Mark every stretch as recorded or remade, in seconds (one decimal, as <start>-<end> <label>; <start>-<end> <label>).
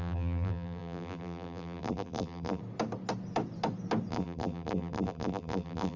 0.0-2.6 remade; 2.6-4.1 recorded; 4.1-6.0 remade